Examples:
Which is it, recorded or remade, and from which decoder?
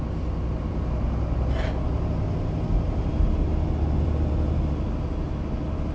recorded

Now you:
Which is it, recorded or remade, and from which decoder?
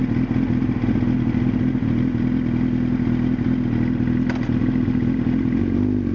recorded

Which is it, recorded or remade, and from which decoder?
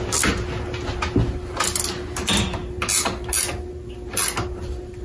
recorded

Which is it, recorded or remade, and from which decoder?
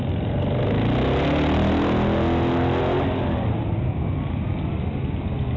recorded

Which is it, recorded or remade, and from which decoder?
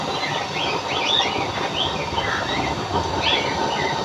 recorded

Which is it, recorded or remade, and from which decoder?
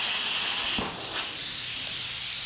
remade, vocoder, BigVGAN v2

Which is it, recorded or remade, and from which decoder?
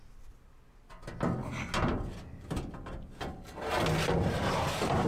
recorded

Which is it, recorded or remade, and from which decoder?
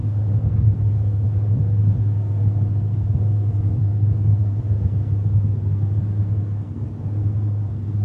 remade, codec, SNAC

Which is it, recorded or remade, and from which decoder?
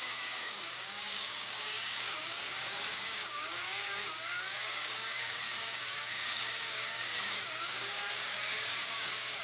remade, codec, DAC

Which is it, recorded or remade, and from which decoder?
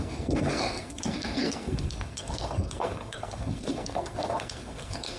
remade, codec, SNAC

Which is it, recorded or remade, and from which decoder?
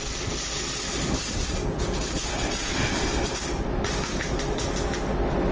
recorded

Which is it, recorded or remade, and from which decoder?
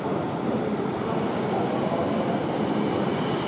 recorded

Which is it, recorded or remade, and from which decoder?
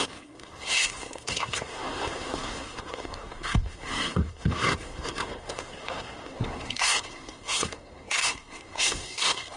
remade, codec, SNAC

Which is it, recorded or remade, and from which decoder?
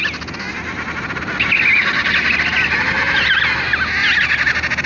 recorded